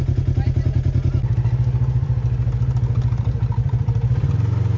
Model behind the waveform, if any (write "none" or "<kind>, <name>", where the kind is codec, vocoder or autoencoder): none